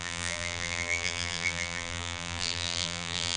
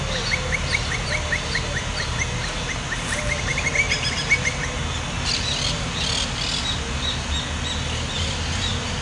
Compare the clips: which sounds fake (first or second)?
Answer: first